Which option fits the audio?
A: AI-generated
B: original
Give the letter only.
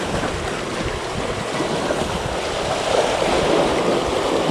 B